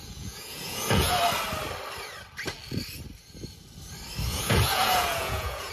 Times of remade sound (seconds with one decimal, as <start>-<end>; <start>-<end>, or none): 0.0-1.2; 4.3-5.7